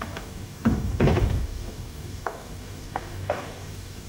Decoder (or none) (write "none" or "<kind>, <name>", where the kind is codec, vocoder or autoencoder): codec, DAC